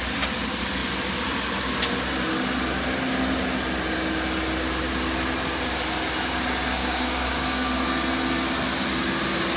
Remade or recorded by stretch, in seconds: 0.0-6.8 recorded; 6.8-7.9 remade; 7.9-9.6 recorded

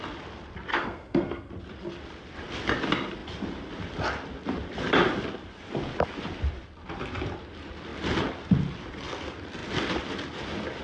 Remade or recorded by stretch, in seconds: 0.0-0.7 recorded; 0.7-1.5 remade; 1.5-10.8 recorded

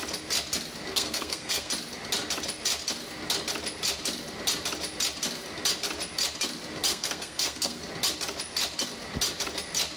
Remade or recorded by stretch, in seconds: 0.0-0.9 recorded; 0.9-1.7 remade; 1.7-6.9 recorded; 6.9-7.8 remade; 7.8-10.0 recorded

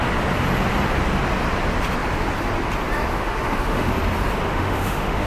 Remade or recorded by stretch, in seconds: 0.0-3.1 recorded; 3.1-3.9 remade; 3.9-4.5 recorded; 4.5-5.3 remade

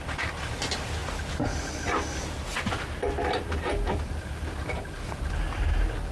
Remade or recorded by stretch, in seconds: 0.0-6.1 recorded

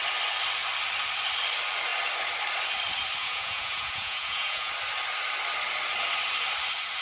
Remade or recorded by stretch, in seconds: 0.0-3.2 recorded; 3.2-4.7 remade; 4.7-7.0 recorded

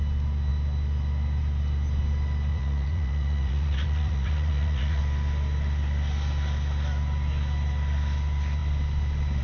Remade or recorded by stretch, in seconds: 0.0-2.5 recorded; 2.5-5.0 remade; 5.0-9.4 recorded

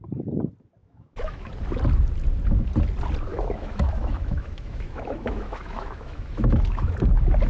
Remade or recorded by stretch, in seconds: 0.0-0.8 recorded; 0.8-1.5 remade; 1.5-3.3 recorded; 3.3-6.9 remade; 6.9-7.5 recorded